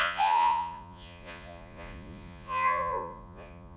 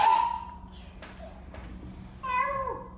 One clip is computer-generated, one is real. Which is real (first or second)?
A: second